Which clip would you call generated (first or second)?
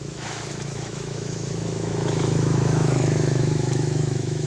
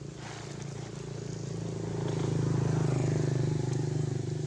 first